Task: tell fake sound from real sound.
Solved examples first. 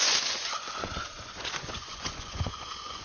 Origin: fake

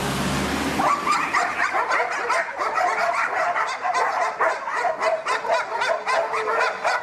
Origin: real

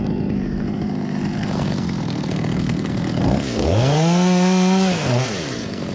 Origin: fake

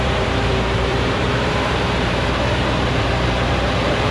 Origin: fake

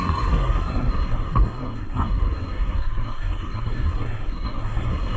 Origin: fake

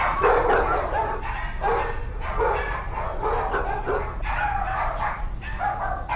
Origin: real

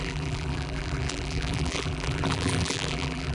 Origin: fake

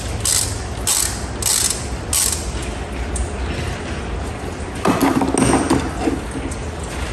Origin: real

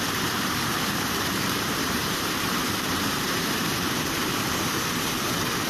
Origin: fake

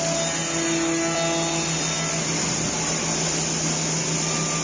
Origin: real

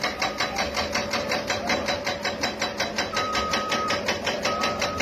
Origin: fake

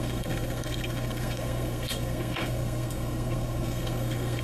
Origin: fake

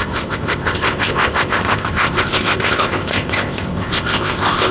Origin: fake